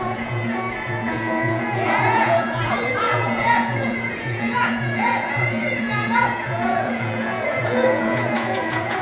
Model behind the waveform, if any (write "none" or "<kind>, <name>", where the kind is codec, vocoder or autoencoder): vocoder, Vocos